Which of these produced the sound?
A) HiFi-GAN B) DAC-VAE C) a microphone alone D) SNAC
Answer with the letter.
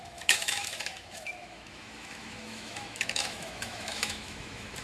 B